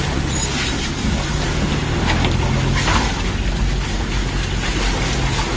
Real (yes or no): yes